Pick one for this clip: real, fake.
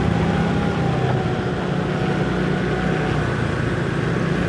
real